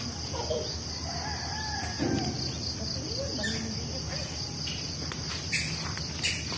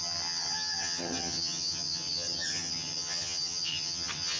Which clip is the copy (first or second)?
second